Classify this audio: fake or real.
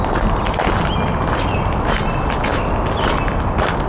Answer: real